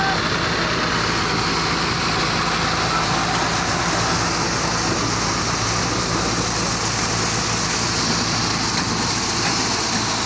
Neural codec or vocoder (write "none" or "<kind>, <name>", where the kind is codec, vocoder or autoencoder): none